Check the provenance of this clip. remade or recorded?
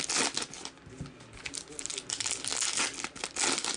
recorded